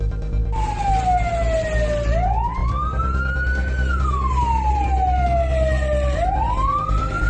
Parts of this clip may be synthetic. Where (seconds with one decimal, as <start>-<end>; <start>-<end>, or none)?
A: none